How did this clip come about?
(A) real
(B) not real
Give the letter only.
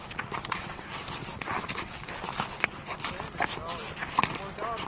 A